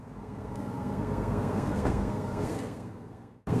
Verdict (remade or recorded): remade